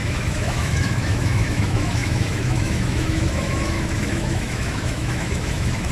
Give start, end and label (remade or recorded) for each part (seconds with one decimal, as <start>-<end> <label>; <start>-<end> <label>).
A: 0.0-5.9 remade